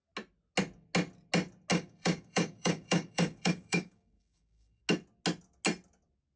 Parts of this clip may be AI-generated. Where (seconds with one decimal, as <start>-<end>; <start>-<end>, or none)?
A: 1.7-4.8